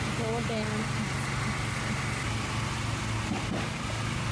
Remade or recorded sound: recorded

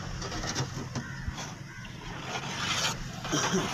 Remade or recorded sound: recorded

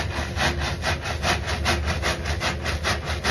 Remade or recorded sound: recorded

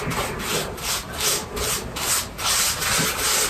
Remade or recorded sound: recorded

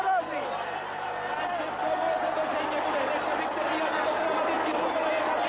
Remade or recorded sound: recorded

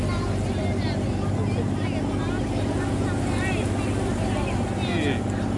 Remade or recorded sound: recorded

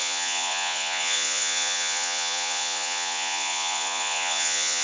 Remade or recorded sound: remade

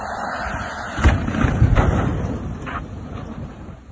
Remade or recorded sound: remade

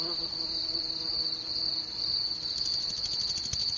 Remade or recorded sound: recorded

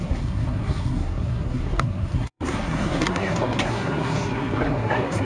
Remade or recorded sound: remade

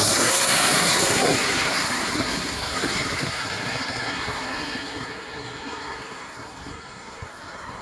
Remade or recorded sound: remade